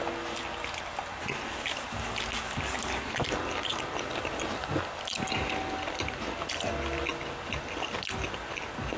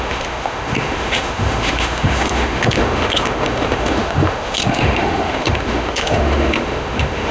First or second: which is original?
first